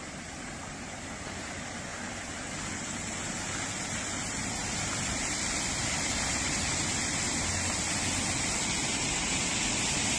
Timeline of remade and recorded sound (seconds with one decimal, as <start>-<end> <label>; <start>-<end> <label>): 0.0-4.6 recorded; 4.6-7.4 remade; 7.4-10.2 recorded